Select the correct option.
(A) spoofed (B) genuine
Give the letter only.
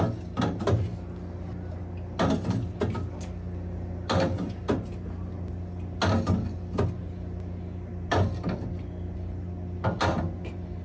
B